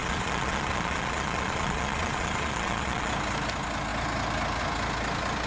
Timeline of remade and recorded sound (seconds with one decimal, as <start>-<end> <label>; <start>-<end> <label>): 0.0-3.1 remade; 3.1-5.5 recorded